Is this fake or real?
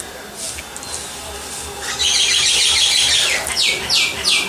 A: real